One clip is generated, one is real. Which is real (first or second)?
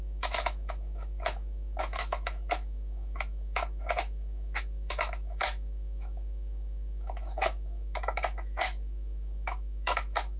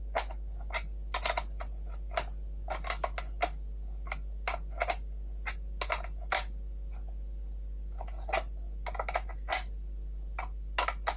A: second